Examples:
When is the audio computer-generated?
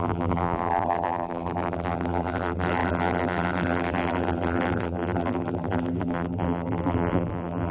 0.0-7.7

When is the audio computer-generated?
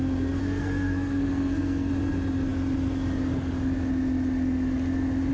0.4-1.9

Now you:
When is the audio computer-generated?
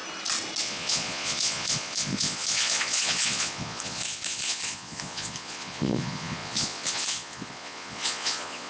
0.6-8.7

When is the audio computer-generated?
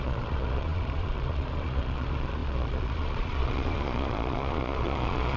0.0-5.4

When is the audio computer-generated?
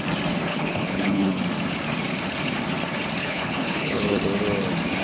0.5-1.4; 3.2-4.2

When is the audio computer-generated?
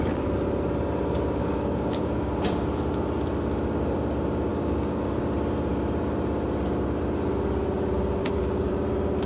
1.4-2.3; 4.5-5.2; 8.2-8.7